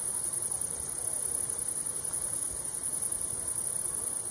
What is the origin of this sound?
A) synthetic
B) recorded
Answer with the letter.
B